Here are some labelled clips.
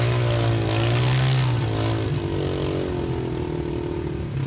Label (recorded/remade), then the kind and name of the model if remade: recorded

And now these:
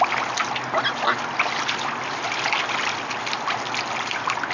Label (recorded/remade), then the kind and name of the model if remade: recorded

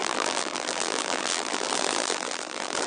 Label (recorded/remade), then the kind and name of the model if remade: remade, vocoder, BigVGAN v2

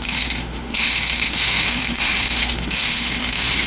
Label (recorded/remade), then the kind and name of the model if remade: remade, autoencoder, DAC-VAE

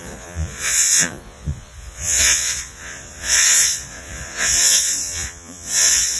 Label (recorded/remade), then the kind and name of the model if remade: remade, vocoder, Vocos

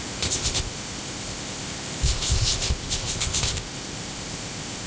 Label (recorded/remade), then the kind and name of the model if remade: remade, codec, ZipCodec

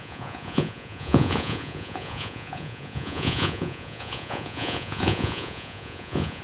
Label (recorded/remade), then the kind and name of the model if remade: remade, vocoder, Vocos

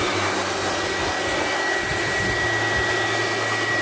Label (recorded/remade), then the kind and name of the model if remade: recorded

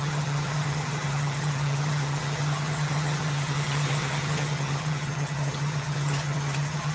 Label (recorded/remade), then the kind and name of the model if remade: remade, vocoder, HiFi-GAN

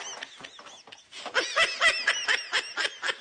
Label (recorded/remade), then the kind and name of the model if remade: recorded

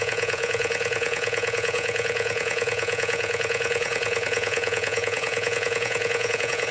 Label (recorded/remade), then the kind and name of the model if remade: remade, vocoder, Vocos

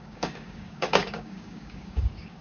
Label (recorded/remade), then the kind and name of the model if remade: remade, codec, DAC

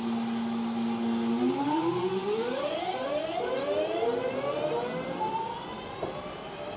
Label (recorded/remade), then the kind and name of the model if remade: recorded